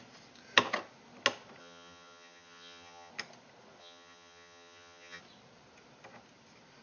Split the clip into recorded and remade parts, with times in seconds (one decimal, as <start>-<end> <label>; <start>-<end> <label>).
0.0-1.6 recorded; 1.6-3.1 remade; 3.1-3.8 recorded; 3.8-5.2 remade; 5.2-6.8 recorded